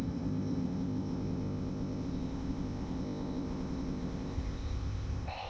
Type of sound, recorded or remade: remade